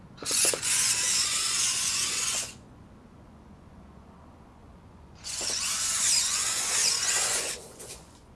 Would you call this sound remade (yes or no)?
yes